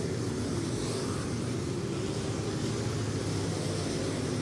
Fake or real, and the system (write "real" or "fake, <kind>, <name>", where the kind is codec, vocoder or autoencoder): real